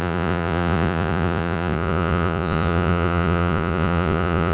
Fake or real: fake